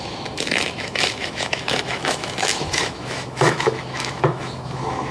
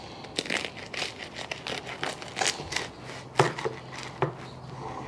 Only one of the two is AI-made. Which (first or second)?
first